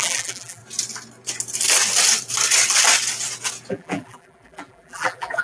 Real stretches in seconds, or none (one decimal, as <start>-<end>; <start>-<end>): 0.6-3.7